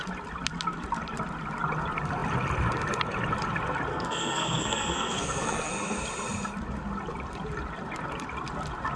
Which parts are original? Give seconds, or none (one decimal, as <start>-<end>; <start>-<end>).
0.0-3.9; 5.7-9.0